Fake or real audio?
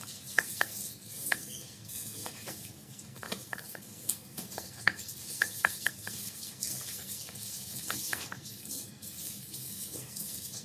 fake